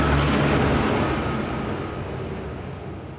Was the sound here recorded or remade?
recorded